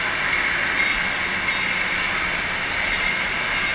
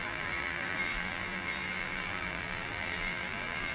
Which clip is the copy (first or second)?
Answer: second